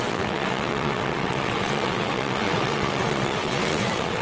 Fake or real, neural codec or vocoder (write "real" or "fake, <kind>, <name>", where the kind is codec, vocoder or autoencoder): fake, vocoder, WaveNeXt